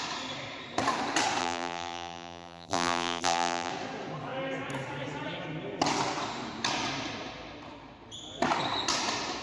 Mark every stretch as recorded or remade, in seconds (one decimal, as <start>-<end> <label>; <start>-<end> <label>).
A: 0.0-1.4 recorded; 1.4-3.7 remade; 3.7-9.4 recorded

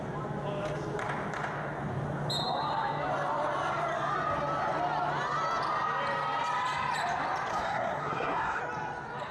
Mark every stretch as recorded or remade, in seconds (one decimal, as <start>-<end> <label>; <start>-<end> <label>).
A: 0.0-7.5 recorded; 7.5-8.6 remade; 8.6-9.3 recorded

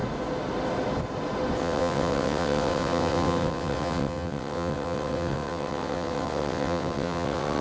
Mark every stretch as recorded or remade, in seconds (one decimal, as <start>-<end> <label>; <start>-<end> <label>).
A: 0.0-1.6 recorded; 1.6-7.6 remade

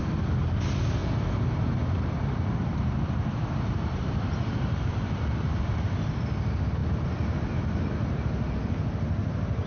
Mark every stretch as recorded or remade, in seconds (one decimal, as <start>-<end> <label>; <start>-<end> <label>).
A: 0.0-1.0 recorded; 1.0-6.2 remade; 6.2-6.8 recorded; 6.8-7.8 remade; 7.8-9.7 recorded

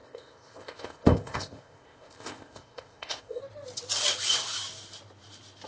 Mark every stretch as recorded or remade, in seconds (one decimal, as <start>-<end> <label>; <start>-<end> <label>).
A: 0.0-3.4 remade; 3.4-5.7 recorded

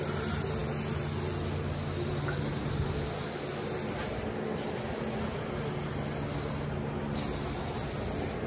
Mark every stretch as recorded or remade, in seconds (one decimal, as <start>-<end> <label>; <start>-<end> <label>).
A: 0.0-8.5 recorded

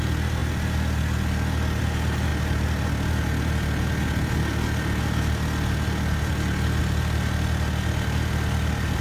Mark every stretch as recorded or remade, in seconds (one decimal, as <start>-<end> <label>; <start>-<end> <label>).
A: 0.0-9.0 recorded